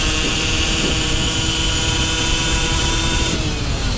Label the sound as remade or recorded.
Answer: remade